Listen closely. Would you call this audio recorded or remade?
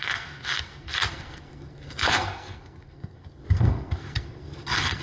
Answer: remade